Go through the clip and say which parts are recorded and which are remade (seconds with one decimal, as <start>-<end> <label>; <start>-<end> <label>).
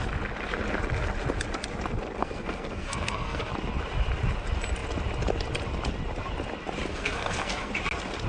0.0-2.2 recorded; 2.2-3.5 remade; 3.5-6.9 recorded; 6.9-7.7 remade; 7.7-8.3 recorded